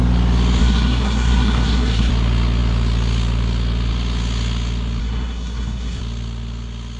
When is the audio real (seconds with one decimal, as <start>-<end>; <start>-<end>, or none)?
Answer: 0.0-0.6; 2.1-5.0; 6.0-7.0